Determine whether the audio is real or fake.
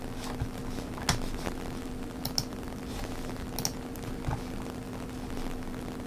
real